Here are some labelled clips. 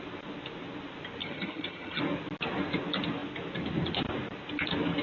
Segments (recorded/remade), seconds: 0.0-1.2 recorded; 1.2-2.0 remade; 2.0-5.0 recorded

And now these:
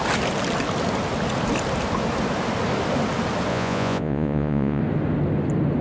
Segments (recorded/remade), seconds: 0.0-3.5 recorded; 3.5-4.8 remade; 4.8-5.8 recorded

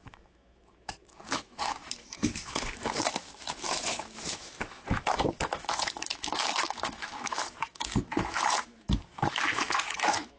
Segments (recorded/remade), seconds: 0.0-10.4 remade

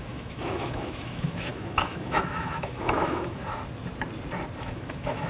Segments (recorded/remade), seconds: 0.0-3.4 remade; 3.4-4.6 recorded; 4.6-5.3 remade

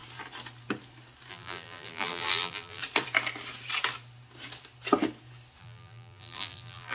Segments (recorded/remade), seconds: 0.0-1.3 recorded; 1.3-2.8 remade; 2.8-5.6 recorded; 5.6-6.9 remade

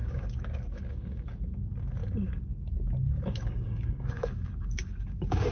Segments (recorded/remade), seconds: 0.0-5.5 remade

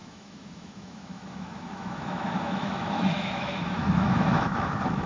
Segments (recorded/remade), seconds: 0.0-5.1 remade